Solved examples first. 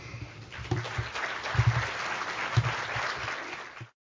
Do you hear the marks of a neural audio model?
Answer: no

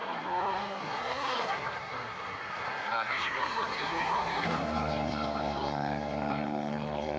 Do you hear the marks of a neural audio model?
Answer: yes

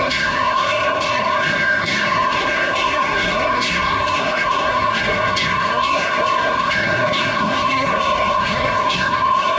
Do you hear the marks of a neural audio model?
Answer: yes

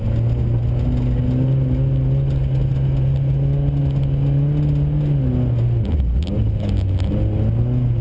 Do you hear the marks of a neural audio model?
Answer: no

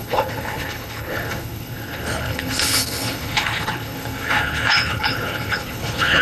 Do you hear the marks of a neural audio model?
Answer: yes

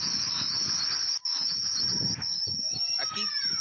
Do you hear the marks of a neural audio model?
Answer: no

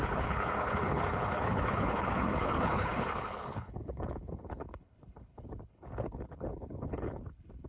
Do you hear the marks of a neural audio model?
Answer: yes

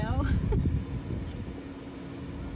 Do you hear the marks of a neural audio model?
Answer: no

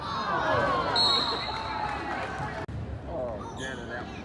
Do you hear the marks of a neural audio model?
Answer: no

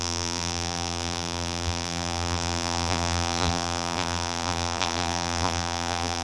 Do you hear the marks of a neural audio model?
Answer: yes